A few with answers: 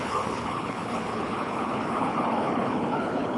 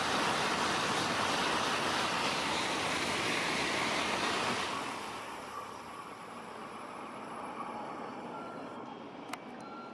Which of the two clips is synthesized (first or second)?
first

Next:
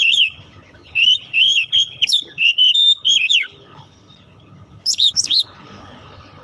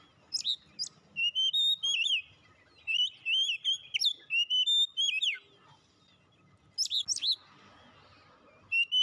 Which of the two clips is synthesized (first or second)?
first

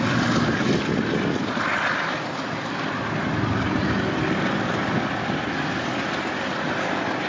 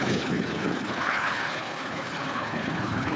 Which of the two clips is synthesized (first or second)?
second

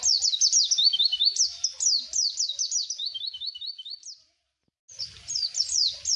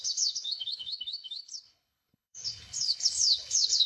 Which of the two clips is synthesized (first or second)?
second